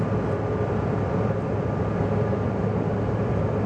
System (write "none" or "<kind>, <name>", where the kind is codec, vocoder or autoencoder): vocoder, BigVGAN v2